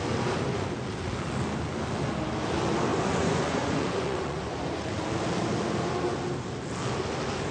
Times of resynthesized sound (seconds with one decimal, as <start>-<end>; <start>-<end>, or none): 2.9-4.8